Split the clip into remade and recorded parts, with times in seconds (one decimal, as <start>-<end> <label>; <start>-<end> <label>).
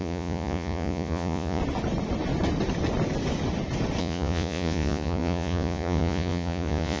0.0-1.6 remade; 1.6-4.0 recorded; 4.0-7.0 remade